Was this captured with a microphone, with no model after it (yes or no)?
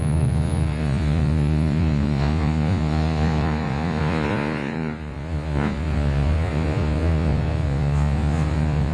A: no